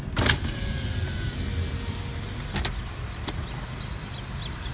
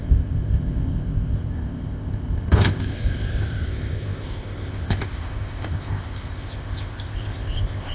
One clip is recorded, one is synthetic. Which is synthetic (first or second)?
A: second